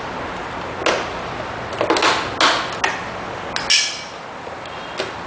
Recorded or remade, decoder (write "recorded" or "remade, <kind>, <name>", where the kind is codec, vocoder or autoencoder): recorded